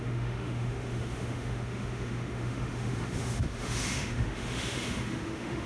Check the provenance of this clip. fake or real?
fake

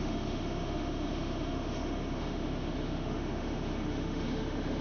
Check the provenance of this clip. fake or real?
fake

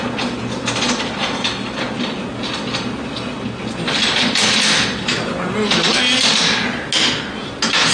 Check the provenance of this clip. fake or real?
real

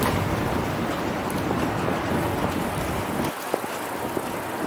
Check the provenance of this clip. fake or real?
real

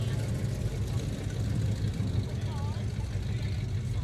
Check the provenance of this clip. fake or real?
real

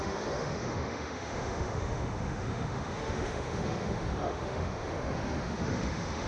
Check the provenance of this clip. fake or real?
fake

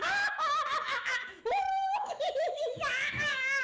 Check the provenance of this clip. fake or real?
fake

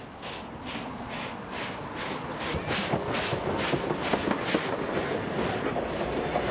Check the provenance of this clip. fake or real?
real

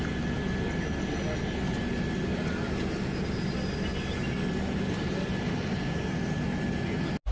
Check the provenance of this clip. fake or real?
real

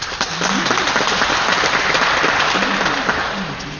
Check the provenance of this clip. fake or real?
real